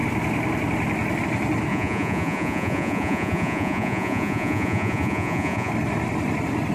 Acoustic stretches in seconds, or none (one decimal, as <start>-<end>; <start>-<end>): 0.0-1.7; 5.7-6.7